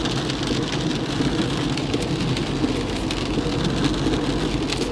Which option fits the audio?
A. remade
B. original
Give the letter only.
B